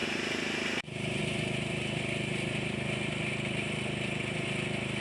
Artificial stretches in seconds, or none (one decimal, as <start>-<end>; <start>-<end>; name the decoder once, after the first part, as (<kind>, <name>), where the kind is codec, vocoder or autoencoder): 0.0-1.2 (vocoder, BigVGAN v2)

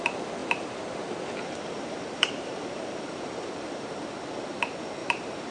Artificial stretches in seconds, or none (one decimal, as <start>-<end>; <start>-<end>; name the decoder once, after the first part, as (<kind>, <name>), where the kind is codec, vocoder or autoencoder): 0.4-3.7 (vocoder, BigVGAN v2); 5.0-5.5

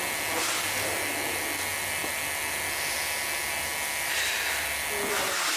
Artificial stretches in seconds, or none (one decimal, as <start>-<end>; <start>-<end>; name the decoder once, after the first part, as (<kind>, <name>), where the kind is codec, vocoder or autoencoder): none

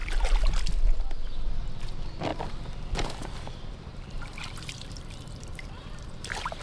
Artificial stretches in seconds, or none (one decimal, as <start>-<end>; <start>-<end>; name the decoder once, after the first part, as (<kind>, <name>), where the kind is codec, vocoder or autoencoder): 2.3-6.6 (vocoder, BigVGAN v2)

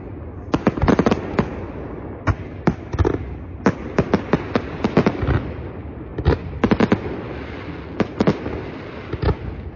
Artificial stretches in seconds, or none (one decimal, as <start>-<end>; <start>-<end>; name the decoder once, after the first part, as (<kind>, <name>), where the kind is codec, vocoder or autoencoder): 6.1-6.8 (vocoder, BigVGAN v2)

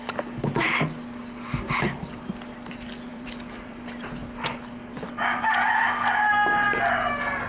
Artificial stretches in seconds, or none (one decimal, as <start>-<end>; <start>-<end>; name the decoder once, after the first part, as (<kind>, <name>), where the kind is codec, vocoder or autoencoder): 3.1-4.1 (vocoder, BigVGAN v2); 4.8-5.7

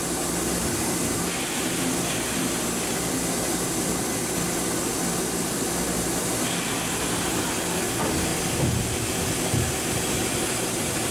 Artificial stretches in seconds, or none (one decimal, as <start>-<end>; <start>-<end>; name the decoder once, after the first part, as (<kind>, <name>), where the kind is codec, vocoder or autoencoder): none